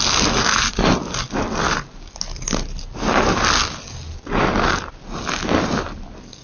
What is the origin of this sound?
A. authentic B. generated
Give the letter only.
A